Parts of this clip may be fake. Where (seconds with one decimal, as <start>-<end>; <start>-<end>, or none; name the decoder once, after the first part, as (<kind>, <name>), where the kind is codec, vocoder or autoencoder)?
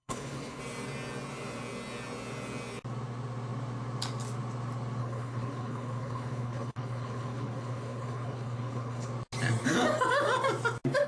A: 0.0-0.6 (codec, HILCodec); 5.0-9.1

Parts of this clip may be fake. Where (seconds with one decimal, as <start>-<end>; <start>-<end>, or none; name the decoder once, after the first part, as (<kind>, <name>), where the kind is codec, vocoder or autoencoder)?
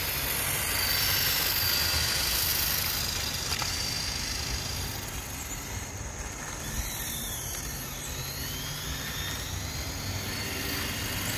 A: none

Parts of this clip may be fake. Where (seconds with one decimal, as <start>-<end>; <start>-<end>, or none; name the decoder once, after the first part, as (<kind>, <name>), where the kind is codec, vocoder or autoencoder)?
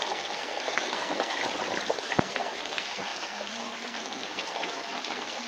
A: 0.0-1.4 (codec, SNAC); 1.9-5.5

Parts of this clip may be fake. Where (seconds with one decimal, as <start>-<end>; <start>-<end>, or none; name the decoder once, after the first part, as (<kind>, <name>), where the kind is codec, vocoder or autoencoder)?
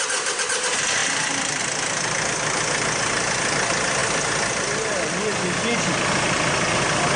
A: none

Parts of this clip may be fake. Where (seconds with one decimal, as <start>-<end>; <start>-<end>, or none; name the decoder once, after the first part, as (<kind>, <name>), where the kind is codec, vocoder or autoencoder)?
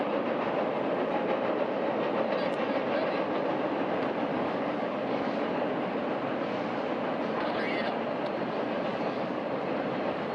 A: 4.3-5.7 (codec, DAC); 8.9-9.4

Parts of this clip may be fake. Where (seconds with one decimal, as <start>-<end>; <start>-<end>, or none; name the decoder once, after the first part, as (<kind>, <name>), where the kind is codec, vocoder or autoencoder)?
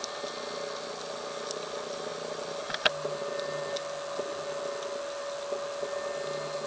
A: none